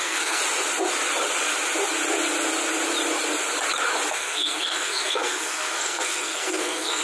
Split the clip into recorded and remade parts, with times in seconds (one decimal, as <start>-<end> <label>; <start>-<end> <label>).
0.0-0.4 remade; 0.4-4.1 recorded; 4.1-7.0 remade